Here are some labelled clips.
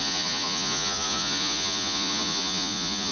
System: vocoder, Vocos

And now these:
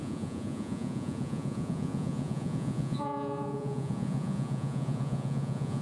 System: vocoder, Vocos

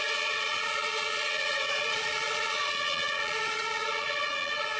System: vocoder, Vocos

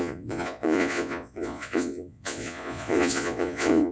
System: vocoder, Vocos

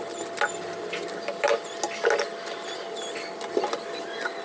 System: none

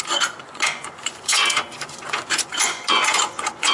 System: vocoder, Vocos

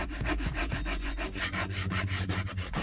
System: vocoder, Vocos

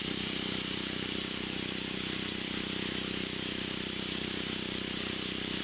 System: none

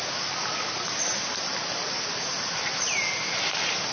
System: none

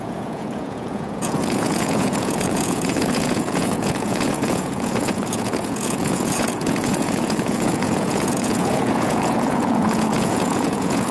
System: vocoder, Vocos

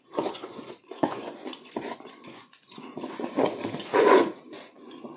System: vocoder, Vocos